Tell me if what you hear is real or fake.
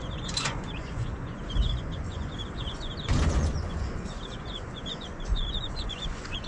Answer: fake